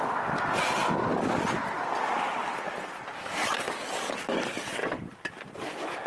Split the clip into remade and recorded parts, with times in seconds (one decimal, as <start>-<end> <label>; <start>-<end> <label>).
0.0-3.1 recorded; 3.1-3.6 remade; 3.6-4.8 recorded; 4.8-5.3 remade; 5.3-6.1 recorded